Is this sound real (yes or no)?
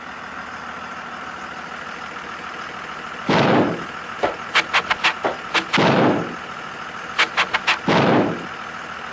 yes